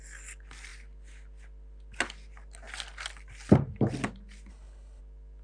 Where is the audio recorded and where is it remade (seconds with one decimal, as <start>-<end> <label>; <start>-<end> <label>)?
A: 0.0-4.5 recorded; 4.5-5.0 remade; 5.0-5.4 recorded